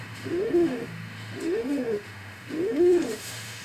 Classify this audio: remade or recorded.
remade